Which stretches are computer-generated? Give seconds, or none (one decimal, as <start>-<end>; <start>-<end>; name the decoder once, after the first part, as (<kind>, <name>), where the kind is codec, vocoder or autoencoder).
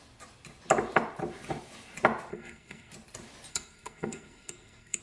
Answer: 2.3-2.9 (codec, SNAC); 3.5-5.0